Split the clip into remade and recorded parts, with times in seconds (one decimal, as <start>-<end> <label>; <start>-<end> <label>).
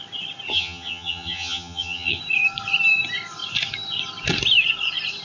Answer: 0.0-0.5 recorded; 0.5-2.2 remade; 2.2-5.2 recorded